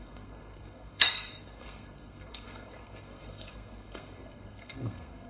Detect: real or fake fake